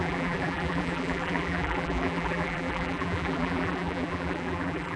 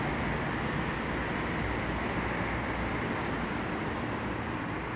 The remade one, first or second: first